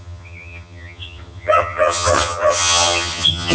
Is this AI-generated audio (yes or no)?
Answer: yes